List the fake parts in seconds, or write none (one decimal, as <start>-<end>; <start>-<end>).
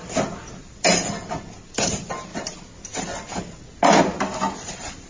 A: none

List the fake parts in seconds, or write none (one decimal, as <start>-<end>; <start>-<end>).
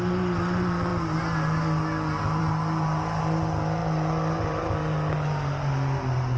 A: none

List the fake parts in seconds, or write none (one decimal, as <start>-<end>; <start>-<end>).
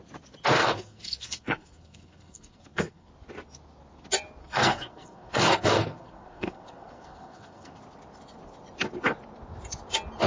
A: 0.6-3.1; 4.4-7.8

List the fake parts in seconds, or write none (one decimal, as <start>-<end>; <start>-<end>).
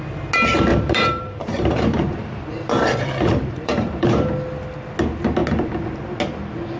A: 0.7-4.3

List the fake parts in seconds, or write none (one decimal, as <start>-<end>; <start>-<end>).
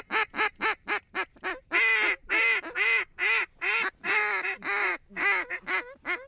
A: none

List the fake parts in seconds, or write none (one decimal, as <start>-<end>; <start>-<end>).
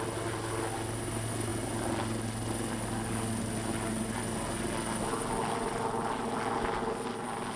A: none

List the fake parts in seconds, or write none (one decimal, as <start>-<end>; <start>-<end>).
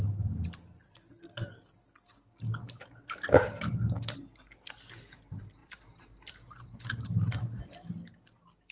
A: 2.5-3.6; 5.6-7.7